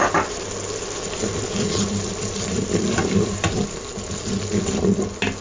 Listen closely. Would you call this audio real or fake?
real